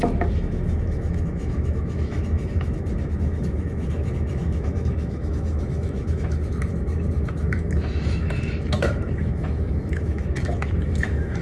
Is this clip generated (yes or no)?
yes